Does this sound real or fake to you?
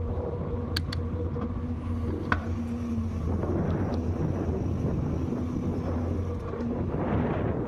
real